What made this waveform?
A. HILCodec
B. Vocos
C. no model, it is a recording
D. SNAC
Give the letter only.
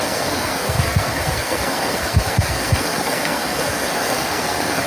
D